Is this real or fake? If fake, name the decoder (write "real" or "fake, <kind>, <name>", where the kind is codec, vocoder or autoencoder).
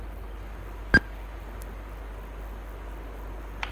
real